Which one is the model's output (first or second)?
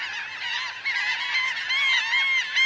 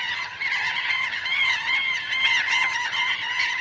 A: second